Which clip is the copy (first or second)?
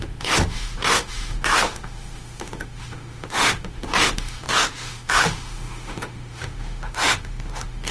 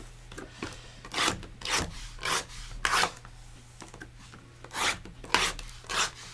first